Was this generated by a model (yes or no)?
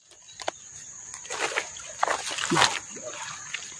no